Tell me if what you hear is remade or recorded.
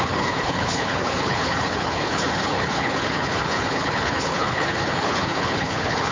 remade